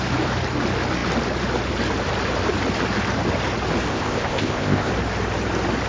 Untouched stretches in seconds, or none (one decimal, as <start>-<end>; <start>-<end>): 0.0-3.9; 4.9-5.9